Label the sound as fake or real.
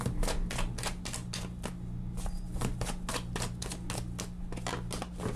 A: real